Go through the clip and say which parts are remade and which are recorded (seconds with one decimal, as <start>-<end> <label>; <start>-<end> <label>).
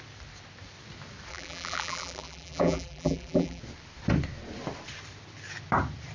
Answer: 0.0-1.3 recorded; 1.3-3.6 remade; 3.6-6.1 recorded